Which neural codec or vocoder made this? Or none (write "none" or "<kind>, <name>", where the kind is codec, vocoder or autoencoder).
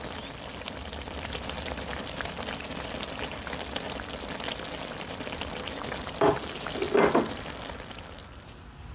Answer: none